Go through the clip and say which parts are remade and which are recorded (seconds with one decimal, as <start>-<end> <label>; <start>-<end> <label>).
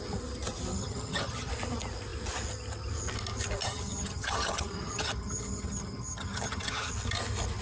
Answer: 0.0-0.7 recorded; 0.7-1.5 remade; 1.5-3.6 recorded; 3.6-6.9 remade; 6.9-7.6 recorded